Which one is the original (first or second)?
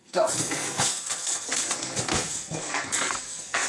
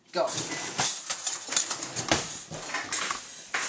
second